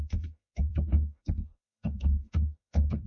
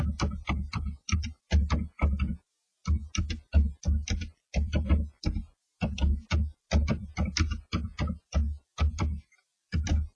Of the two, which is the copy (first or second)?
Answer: first